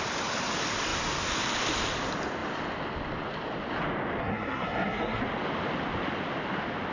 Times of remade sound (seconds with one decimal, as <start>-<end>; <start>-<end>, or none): 4.2-5.2